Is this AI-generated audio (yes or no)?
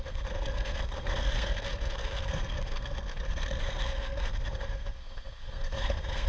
yes